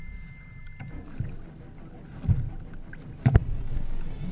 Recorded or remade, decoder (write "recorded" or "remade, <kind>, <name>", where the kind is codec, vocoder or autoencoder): recorded